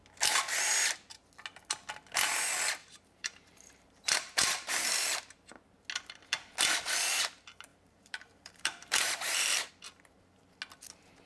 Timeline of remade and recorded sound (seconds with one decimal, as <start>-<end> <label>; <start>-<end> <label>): 0.0-2.8 recorded; 2.8-4.7 remade; 4.7-7.7 recorded; 7.7-9.7 remade; 9.7-11.3 recorded